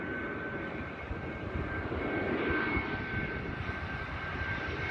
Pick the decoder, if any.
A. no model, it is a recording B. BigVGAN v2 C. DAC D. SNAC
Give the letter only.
A